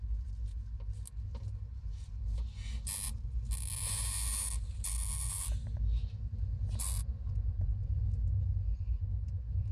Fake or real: real